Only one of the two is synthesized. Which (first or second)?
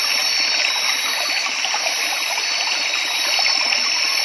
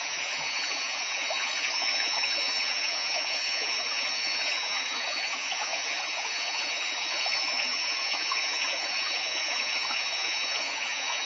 second